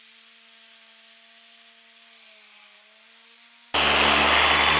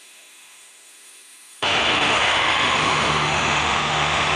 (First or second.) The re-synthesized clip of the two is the second